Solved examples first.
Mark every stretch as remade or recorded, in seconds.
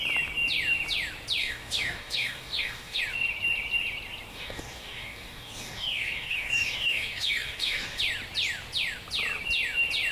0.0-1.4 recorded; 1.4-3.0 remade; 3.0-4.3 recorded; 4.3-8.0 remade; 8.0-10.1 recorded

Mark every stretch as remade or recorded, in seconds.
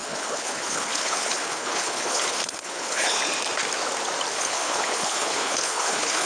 0.0-3.2 remade; 3.2-4.3 recorded; 4.3-6.3 remade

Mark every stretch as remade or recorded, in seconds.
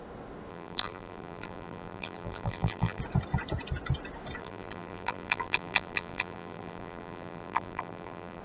0.0-0.5 recorded; 0.5-3.0 remade; 3.0-4.4 recorded; 4.4-8.4 remade